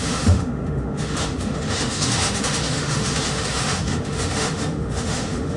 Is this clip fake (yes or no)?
yes